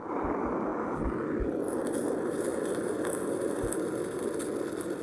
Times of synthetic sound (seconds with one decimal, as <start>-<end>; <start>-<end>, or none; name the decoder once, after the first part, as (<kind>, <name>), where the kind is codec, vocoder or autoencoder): none